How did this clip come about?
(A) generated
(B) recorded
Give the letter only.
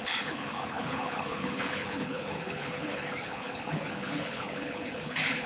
A